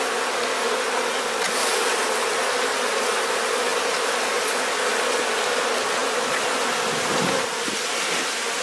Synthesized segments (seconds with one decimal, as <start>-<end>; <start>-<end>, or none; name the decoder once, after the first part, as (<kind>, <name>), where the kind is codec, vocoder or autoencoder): none

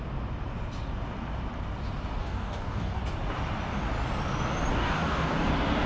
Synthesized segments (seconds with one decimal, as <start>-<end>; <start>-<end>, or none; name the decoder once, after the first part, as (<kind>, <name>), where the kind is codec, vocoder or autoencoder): 2.2-3.0 (codec, DAC); 4.7-5.5

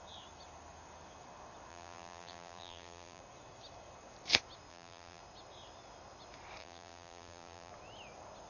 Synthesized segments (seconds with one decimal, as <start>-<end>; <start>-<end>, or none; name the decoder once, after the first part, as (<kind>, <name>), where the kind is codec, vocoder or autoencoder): 1.7-3.2 (vocoder, BigVGAN v2); 4.7-5.2; 6.6-7.7